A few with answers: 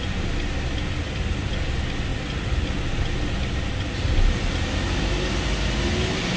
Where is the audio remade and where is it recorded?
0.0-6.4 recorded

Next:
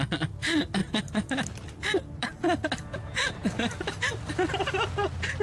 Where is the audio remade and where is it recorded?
0.0-0.8 recorded; 0.8-2.4 remade; 2.4-3.4 recorded; 3.4-4.0 remade; 4.0-5.4 recorded

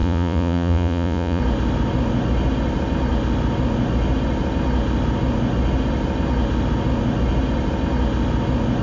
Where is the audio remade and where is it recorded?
0.0-1.4 remade; 1.4-8.8 recorded

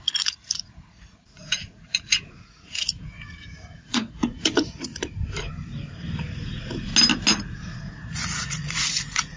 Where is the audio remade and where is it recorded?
0.0-4.9 remade; 4.9-6.3 recorded; 6.3-6.9 remade; 6.9-7.5 recorded; 7.5-9.4 remade

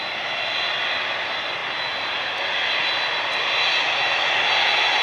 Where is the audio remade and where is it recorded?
0.0-5.0 recorded

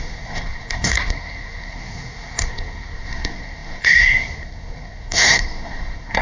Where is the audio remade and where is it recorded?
0.0-6.2 remade